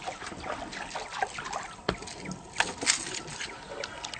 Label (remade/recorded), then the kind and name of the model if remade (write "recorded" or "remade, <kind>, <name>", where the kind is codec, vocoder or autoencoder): recorded